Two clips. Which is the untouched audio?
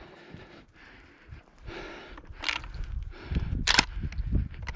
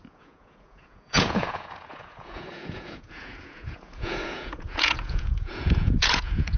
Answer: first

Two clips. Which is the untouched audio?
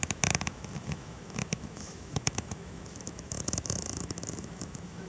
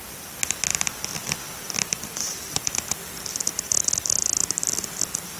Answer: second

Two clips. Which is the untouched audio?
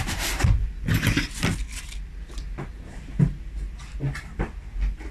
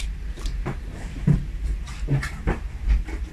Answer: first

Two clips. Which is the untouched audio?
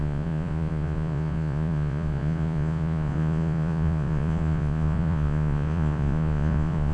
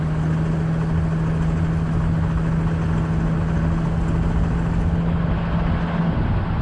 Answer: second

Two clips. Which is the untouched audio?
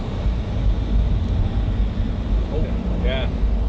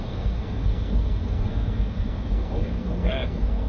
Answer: first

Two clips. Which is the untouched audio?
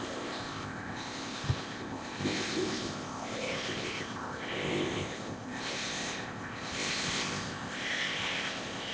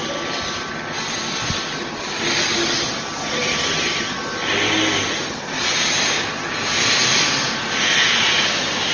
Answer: second